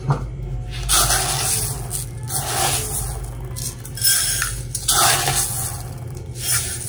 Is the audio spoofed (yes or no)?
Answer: no